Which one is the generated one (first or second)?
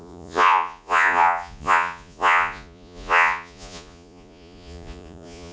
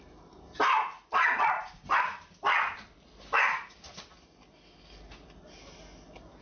first